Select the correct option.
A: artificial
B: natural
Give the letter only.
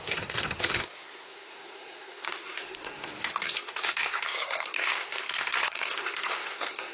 A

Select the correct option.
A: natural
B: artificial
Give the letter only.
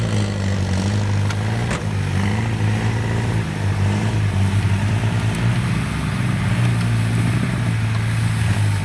A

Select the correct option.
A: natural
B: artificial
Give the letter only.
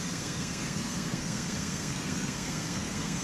B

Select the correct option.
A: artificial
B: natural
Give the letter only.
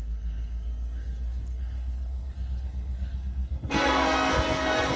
A